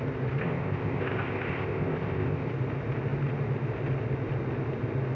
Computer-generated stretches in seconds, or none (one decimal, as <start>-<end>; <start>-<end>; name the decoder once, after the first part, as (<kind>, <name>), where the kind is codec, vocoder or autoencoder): 0.4-2.5 (codec, ZipCodec)